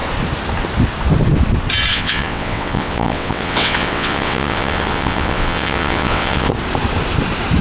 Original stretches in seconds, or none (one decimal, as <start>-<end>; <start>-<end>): 0.0-1.9; 6.5-7.6